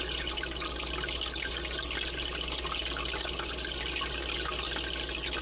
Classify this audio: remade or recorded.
recorded